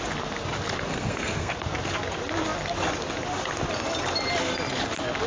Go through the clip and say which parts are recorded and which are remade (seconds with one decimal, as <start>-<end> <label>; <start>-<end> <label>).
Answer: 0.0-0.9 recorded; 0.9-1.5 remade; 1.5-5.3 recorded